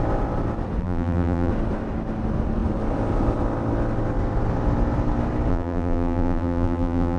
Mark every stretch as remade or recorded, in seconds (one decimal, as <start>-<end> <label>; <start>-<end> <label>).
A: 0.0-0.8 recorded; 0.8-1.5 remade; 1.5-5.5 recorded; 5.5-7.2 remade